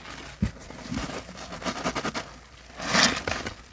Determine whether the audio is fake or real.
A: real